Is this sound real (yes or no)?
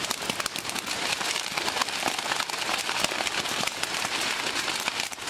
yes